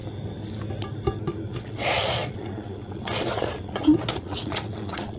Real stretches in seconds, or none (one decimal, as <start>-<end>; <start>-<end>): 0.0-1.5

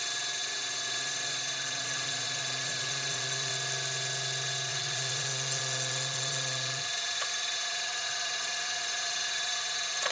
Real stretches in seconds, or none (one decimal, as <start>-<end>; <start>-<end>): 0.0-0.4; 3.5-4.7

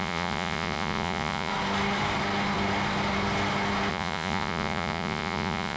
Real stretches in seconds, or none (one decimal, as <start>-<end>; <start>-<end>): 1.5-3.9

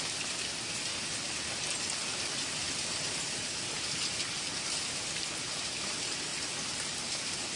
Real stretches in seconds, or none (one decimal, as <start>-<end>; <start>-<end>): 0.0-7.6

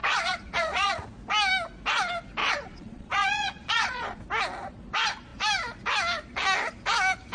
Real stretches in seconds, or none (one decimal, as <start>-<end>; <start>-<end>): 1.0-2.4; 4.2-7.3